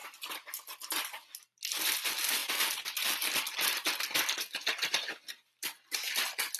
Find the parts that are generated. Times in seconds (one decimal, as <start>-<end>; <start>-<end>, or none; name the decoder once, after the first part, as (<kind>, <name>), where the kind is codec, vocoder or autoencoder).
2.4-6.6 (vocoder, BigVGAN v2)